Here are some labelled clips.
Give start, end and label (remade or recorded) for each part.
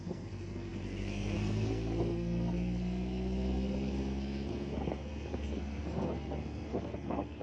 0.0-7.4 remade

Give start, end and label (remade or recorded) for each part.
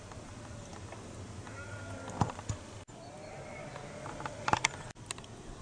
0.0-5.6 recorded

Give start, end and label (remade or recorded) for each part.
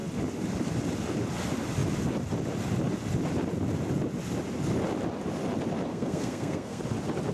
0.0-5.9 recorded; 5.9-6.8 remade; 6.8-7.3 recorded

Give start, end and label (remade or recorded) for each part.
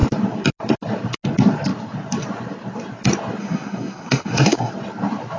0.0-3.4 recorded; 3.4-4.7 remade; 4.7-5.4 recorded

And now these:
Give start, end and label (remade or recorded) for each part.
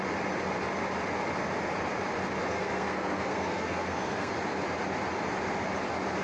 0.0-2.4 recorded; 2.4-4.3 remade; 4.3-6.2 recorded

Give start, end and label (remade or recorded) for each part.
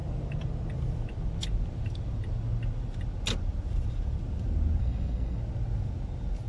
0.0-4.8 recorded; 4.8-5.4 remade; 5.4-6.5 recorded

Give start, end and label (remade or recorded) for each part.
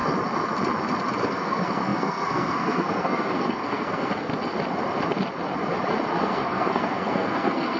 0.0-1.2 recorded; 1.2-4.3 remade; 4.3-6.2 recorded; 6.2-7.8 remade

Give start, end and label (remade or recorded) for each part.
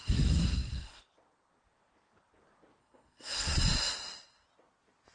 0.0-1.0 remade; 1.0-2.8 recorded; 2.8-3.6 remade; 3.6-5.1 recorded